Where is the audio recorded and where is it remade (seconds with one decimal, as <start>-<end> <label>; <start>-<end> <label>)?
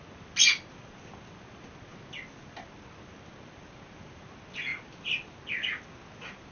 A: 0.0-6.5 recorded